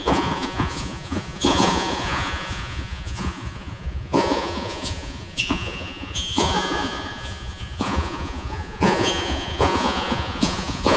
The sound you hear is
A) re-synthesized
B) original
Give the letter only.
A